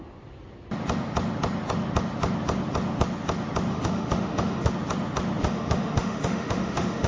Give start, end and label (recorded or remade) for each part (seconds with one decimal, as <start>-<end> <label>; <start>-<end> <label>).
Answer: 0.0-3.7 recorded; 3.7-4.7 remade; 4.7-5.4 recorded; 5.4-7.1 remade